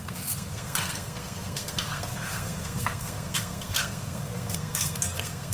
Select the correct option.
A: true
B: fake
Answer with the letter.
B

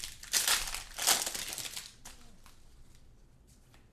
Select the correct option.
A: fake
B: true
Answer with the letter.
B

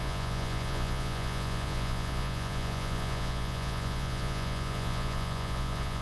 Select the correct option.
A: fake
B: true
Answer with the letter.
A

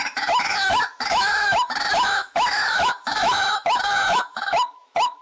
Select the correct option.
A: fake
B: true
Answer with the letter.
A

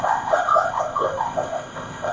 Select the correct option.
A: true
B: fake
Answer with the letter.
B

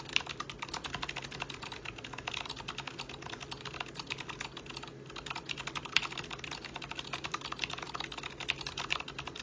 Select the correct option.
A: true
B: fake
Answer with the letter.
A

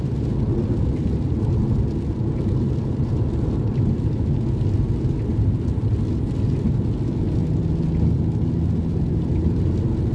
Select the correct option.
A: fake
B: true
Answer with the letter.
B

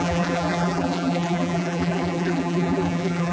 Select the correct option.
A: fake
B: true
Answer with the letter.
A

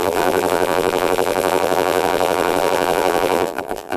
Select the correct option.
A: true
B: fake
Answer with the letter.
B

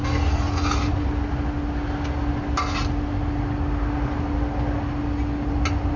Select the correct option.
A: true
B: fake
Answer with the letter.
A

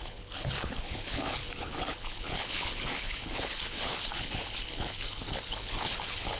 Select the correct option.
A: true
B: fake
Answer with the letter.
B